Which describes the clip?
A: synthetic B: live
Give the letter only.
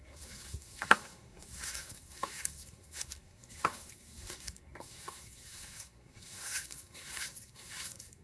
A